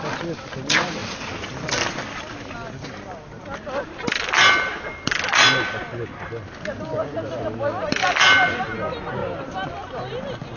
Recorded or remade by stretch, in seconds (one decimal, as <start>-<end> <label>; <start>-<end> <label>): 0.0-10.6 recorded